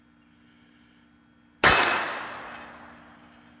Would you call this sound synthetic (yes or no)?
no